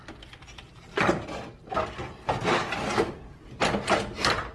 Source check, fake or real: real